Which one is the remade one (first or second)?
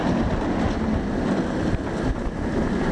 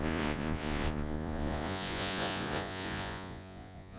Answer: second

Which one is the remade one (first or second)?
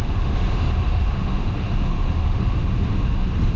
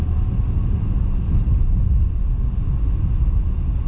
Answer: first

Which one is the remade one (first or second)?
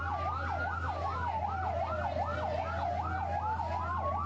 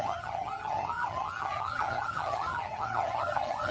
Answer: second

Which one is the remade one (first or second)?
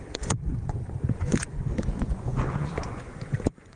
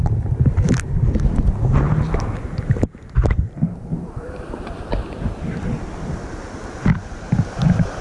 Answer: first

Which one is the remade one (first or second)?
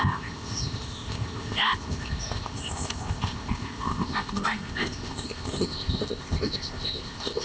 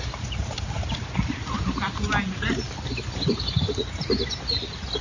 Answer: first